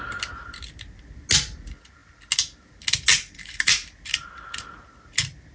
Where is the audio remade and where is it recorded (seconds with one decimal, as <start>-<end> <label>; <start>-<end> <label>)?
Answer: 0.0-3.1 recorded; 3.1-3.7 remade; 3.7-5.5 recorded